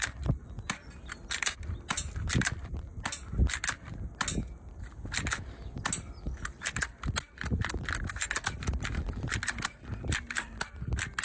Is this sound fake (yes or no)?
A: no